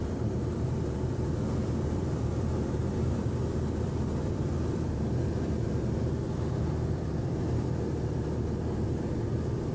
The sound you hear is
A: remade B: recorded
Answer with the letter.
A